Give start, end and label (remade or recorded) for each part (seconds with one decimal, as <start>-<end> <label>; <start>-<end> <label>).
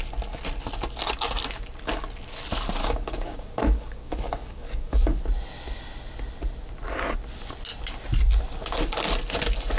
0.0-2.8 recorded; 2.8-5.2 remade; 5.2-9.8 recorded